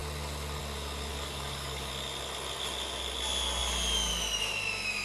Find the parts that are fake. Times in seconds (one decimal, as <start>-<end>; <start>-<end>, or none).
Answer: 1.1-1.9